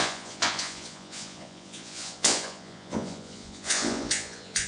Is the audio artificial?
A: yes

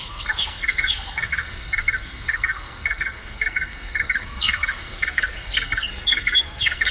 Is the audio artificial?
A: yes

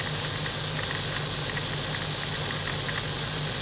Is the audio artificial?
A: no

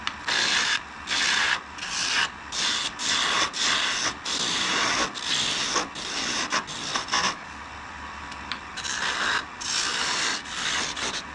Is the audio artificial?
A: no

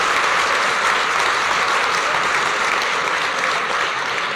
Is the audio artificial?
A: no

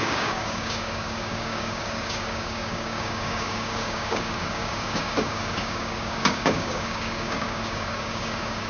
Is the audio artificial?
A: yes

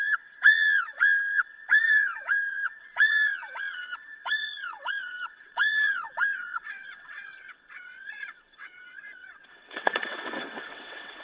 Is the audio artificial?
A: yes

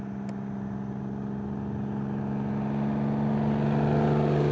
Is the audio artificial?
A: no